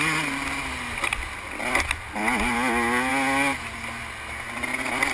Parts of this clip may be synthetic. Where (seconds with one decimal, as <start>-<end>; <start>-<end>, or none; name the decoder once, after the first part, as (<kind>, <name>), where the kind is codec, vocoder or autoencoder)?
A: none